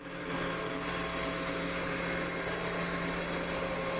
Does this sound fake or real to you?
real